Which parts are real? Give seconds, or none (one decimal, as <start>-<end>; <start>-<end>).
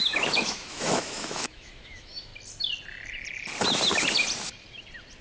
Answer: 2.3-5.2